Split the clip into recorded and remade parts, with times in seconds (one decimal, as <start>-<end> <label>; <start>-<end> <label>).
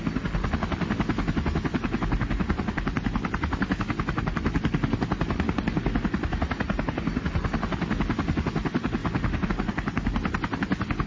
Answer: 0.0-11.1 recorded